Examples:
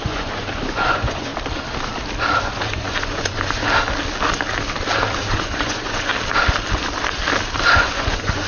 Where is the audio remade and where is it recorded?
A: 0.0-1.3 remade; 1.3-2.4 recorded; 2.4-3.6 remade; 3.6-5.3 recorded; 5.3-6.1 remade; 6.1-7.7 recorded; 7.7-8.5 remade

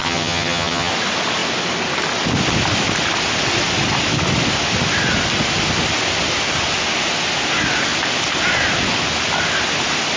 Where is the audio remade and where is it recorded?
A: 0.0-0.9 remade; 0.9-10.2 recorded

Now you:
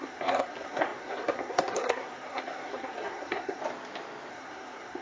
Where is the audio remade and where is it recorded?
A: 0.0-3.6 remade; 3.6-4.3 recorded; 4.3-5.0 remade